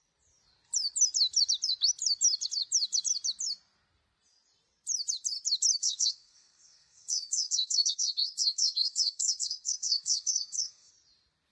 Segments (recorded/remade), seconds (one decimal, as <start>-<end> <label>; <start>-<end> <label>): 0.0-5.8 recorded; 5.8-10.9 remade; 10.9-11.5 recorded